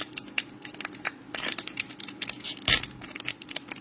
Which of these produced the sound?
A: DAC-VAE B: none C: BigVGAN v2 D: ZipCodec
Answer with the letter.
B